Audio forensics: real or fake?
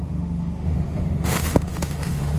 fake